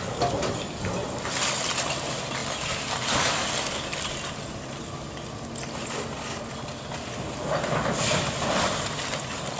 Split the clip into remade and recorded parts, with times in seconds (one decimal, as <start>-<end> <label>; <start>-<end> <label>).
0.0-9.6 recorded